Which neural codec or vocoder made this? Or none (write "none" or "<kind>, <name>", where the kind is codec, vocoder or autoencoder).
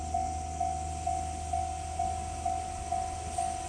none